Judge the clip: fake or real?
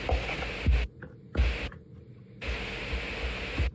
real